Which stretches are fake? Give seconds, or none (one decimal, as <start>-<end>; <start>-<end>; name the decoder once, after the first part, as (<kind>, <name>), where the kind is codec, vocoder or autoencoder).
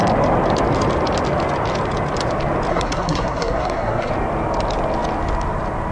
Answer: 2.7-4.1 (codec, SNAC)